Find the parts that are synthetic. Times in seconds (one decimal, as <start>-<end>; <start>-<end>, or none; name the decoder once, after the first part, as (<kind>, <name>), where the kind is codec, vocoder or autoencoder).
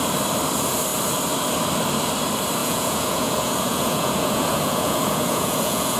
2.6-6.0 (vocoder, Vocos)